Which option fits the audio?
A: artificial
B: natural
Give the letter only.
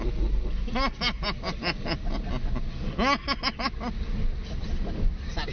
B